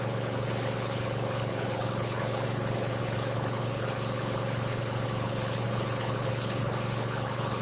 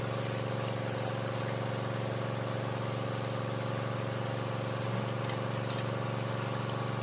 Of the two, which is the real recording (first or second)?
second